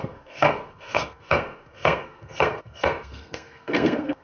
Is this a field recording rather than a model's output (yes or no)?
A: no